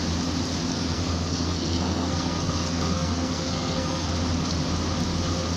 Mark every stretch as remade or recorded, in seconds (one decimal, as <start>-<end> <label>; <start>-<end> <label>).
0.0-0.7 recorded; 0.7-4.1 remade; 4.1-5.6 recorded